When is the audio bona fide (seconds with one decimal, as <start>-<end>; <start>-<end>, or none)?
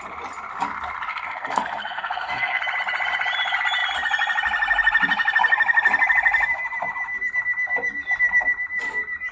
0.0-1.1; 2.6-9.3